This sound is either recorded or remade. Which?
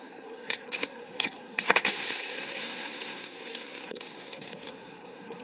remade